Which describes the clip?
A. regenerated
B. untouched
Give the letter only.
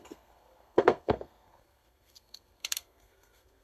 A